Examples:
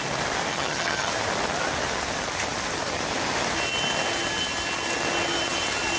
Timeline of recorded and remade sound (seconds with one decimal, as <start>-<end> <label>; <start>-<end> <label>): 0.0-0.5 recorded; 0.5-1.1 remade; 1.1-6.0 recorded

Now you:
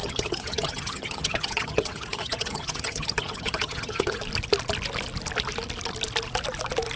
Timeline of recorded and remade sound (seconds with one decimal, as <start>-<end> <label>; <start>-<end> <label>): 0.0-4.2 remade; 4.2-7.0 recorded

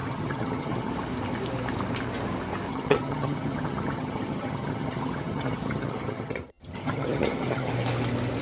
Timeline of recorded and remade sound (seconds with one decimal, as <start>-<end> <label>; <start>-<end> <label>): 0.0-0.9 remade; 0.9-2.7 recorded; 2.7-7.7 remade; 7.7-8.4 recorded